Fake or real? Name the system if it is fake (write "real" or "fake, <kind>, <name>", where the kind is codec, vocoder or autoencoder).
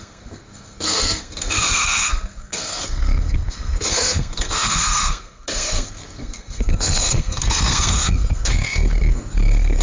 fake, codec, SNAC